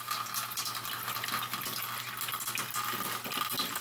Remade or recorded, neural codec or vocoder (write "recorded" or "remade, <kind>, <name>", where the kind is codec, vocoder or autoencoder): recorded